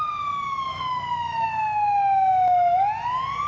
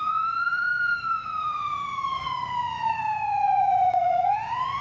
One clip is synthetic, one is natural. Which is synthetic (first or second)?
second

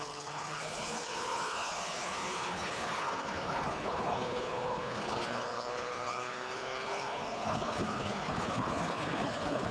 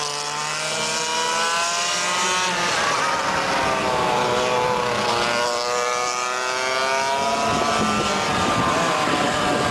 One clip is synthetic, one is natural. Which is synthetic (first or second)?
first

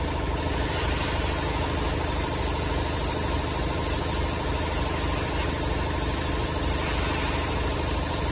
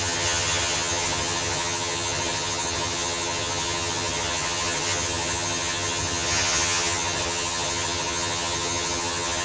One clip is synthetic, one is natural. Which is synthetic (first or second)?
second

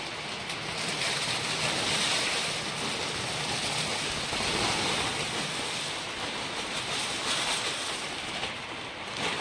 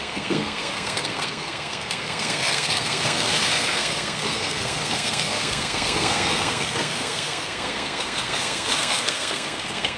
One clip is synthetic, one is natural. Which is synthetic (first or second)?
second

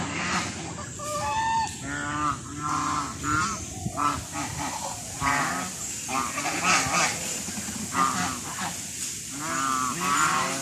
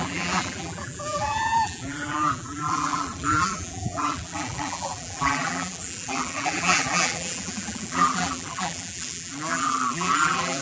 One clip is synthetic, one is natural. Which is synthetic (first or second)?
second